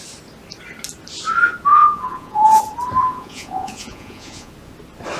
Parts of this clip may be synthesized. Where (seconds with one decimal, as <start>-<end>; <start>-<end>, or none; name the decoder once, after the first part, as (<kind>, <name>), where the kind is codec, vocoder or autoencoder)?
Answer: 1.7-2.6 (vocoder, Vocos); 3.0-4.5

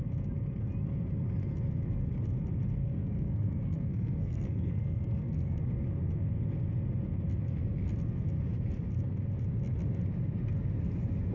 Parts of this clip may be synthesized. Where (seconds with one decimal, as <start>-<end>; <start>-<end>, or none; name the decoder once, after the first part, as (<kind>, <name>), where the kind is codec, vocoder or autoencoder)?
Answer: 2.8-5.6 (codec, SNAC)

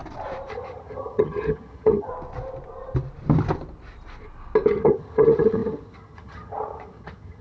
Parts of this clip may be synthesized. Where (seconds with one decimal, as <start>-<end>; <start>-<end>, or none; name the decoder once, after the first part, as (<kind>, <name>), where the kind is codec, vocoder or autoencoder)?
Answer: 0.5-2.1 (vocoder, HiFi-GAN); 4.7-7.4

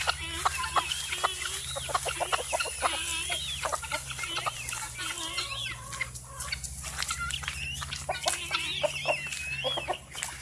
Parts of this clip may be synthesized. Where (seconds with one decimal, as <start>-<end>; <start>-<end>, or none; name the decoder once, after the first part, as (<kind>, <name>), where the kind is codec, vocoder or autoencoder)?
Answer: none